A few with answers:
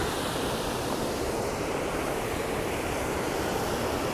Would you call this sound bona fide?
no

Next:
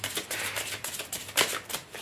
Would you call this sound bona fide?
yes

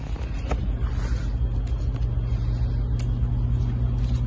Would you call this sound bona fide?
yes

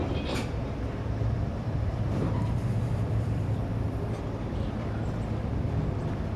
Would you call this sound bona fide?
no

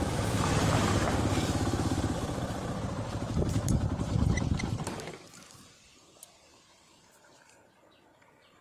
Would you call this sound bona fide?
no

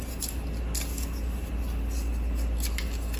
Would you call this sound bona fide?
yes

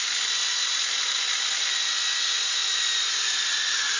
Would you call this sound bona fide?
no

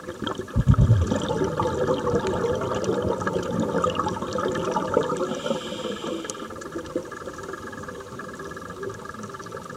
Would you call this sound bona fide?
yes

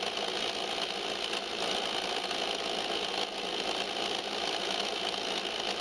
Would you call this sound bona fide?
yes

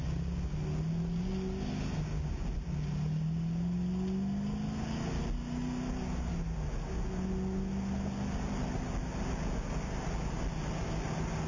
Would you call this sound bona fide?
yes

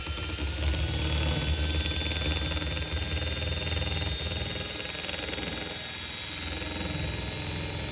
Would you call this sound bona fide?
yes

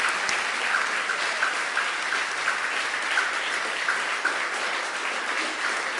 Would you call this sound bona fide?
yes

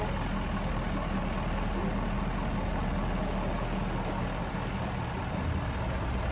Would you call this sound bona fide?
yes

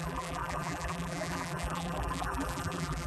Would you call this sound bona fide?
no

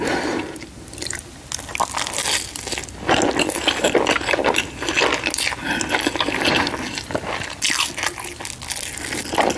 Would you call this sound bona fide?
yes